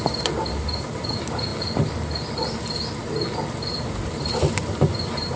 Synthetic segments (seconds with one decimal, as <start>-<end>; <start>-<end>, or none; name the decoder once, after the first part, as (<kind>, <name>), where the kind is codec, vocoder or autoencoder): 0.0-1.5 (vocoder, BigVGAN v2); 3.7-5.4